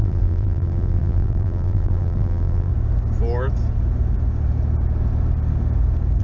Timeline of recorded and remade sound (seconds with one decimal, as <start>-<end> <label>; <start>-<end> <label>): 0.0-2.7 remade; 2.7-6.2 recorded

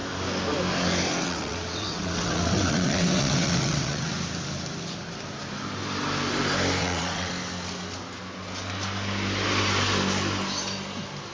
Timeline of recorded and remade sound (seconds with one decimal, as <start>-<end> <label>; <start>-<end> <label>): 0.0-1.2 recorded; 1.2-4.1 remade; 4.1-6.8 recorded; 6.8-7.3 remade; 7.3-11.3 recorded

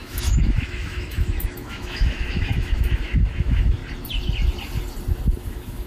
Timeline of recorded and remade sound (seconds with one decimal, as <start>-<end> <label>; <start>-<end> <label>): 0.0-3.8 remade; 3.8-5.4 recorded; 5.4-5.9 remade

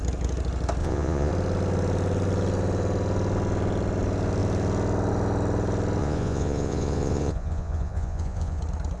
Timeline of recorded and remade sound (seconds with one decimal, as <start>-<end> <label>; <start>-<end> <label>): 0.0-0.8 recorded; 0.8-1.3 remade; 1.3-6.0 recorded; 6.0-8.6 remade; 8.6-9.0 recorded

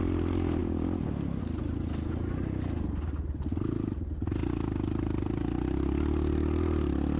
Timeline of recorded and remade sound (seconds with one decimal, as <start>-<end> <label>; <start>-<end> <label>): 0.0-7.2 recorded

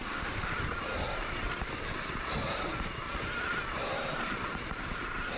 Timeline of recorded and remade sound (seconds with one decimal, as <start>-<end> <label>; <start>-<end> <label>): 0.0-0.5 remade; 0.5-5.4 recorded

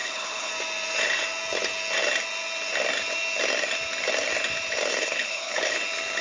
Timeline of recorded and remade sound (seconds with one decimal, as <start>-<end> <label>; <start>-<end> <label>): 0.0-0.5 remade; 0.5-4.9 recorded; 4.9-5.8 remade; 5.8-6.2 recorded

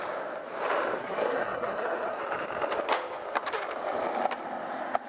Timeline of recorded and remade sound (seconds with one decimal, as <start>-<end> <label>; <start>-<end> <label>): 0.0-1.0 recorded; 1.0-2.2 remade; 2.2-5.1 recorded